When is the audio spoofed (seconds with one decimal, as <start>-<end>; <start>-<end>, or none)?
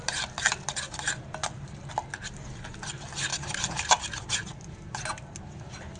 3.3-4.0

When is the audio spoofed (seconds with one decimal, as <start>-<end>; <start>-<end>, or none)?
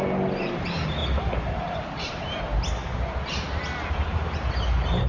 1.0-2.4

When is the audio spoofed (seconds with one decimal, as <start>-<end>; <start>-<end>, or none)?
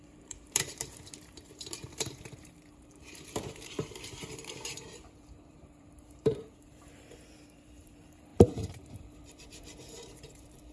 0.0-10.7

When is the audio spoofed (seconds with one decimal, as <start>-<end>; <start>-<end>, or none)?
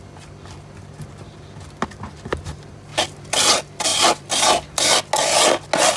3.9-4.8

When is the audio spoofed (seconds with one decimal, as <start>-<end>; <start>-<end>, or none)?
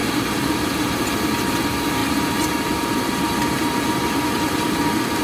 0.0-1.0; 2.0-5.2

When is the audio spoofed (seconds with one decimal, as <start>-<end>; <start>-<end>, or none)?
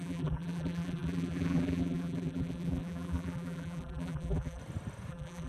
0.0-4.6; 5.1-5.5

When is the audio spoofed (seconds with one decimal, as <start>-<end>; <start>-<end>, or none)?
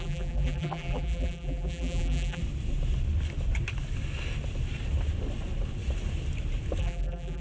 0.0-2.4; 6.8-7.4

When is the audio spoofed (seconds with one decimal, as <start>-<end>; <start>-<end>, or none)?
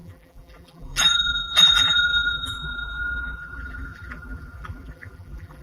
0.0-5.6